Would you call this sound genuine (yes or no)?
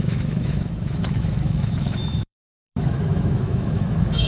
no